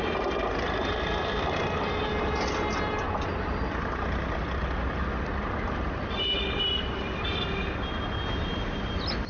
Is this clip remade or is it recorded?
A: recorded